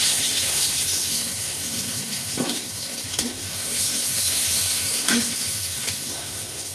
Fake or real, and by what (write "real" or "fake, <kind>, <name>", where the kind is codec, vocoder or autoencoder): fake, codec, SNAC